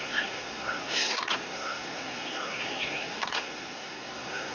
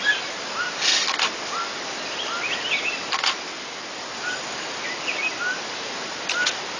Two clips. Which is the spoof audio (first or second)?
first